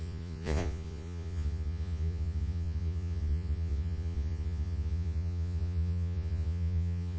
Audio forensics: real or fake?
fake